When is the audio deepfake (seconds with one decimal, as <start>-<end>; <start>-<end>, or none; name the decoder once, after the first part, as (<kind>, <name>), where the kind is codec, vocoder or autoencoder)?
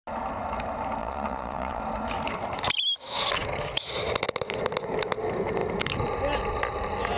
1.0-1.8 (vocoder, Vocos)